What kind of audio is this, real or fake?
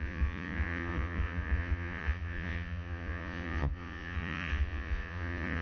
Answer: fake